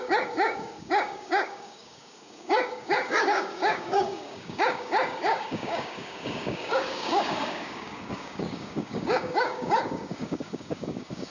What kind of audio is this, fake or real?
fake